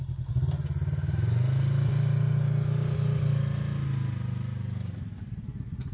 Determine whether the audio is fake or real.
real